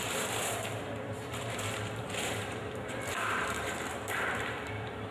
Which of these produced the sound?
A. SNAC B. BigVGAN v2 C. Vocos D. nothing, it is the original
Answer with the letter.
B